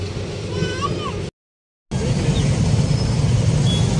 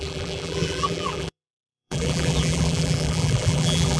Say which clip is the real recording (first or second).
first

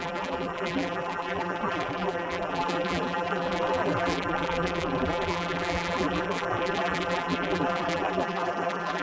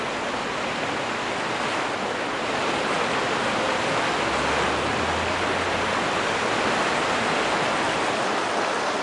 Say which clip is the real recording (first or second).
second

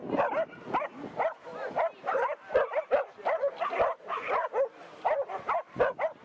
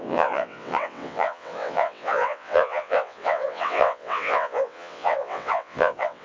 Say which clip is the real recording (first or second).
first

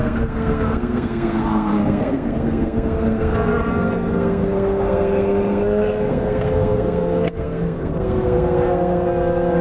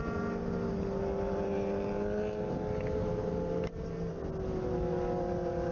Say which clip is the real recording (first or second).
second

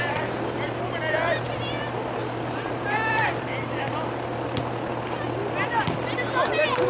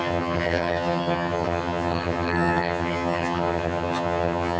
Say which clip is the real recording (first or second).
first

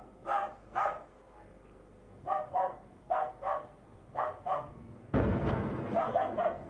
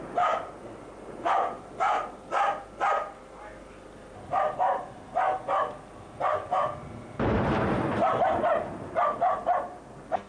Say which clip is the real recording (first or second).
second